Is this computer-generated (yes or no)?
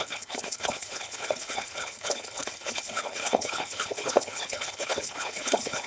yes